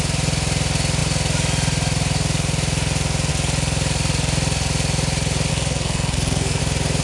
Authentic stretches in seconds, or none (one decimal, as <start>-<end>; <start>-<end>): 0.0-5.5; 6.6-7.0